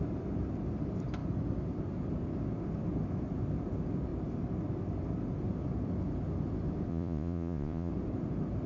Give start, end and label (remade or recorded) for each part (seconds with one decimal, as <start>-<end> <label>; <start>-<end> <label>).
0.0-6.9 recorded; 6.9-7.9 remade; 7.9-8.7 recorded